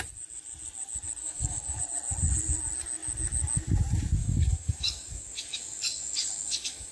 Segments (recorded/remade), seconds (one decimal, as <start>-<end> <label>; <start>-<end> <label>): 0.0-1.2 recorded; 1.2-1.8 remade; 1.8-4.2 recorded; 4.2-6.9 remade